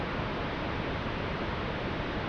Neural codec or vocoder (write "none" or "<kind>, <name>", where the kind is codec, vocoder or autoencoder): none